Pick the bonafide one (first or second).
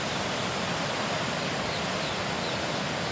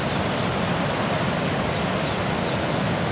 second